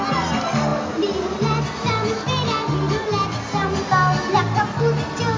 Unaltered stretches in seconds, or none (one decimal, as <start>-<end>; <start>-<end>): 0.0-5.4